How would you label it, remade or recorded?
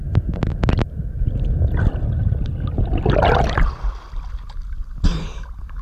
recorded